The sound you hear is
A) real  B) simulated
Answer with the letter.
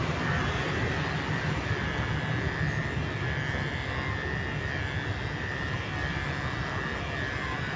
A